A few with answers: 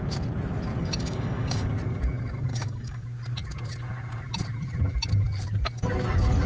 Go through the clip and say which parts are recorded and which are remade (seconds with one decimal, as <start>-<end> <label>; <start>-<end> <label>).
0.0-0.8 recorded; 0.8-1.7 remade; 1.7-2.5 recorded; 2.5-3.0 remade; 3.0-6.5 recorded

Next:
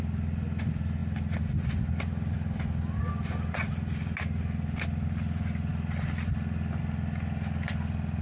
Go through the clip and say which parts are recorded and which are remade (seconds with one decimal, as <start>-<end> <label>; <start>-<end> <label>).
0.0-8.2 recorded

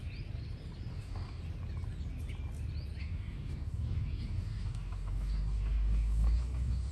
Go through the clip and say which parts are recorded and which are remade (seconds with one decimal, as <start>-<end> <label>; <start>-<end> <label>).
0.0-0.9 recorded; 0.9-1.4 remade; 1.4-3.0 recorded; 3.0-6.9 remade

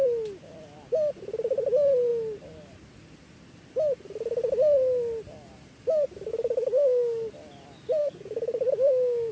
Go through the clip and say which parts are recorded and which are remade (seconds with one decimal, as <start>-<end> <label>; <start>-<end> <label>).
0.0-6.3 recorded; 6.3-7.3 remade; 7.3-8.0 recorded; 8.0-9.3 remade

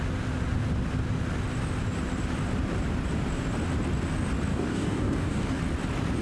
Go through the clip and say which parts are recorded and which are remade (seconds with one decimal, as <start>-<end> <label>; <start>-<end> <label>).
0.0-4.5 recorded; 4.5-5.6 remade; 5.6-6.2 recorded

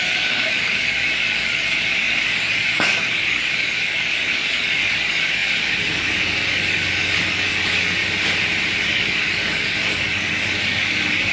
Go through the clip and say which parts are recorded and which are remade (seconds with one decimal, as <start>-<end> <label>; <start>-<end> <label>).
0.0-8.0 remade; 8.0-8.8 recorded; 8.8-11.3 remade